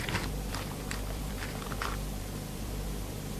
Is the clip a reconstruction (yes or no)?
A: yes